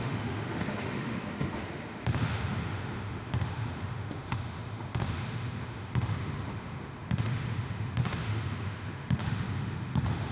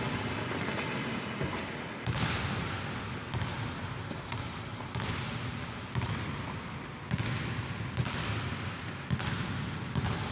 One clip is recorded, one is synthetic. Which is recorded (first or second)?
second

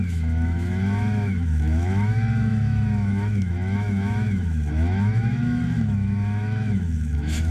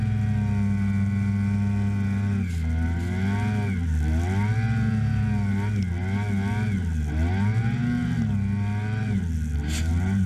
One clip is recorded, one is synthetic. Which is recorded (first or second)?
second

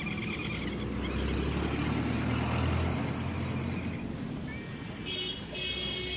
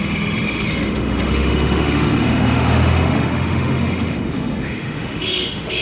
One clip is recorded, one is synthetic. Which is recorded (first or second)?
first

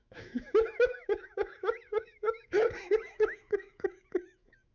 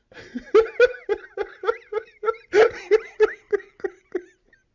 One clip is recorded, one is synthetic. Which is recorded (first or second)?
second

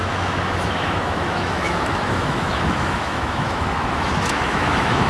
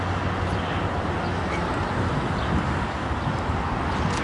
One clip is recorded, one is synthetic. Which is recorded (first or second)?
second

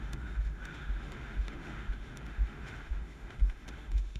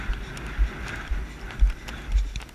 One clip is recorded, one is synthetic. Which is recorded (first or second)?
second